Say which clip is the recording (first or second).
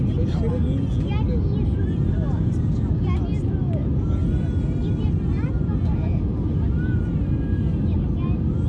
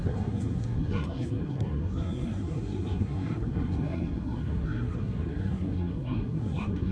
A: first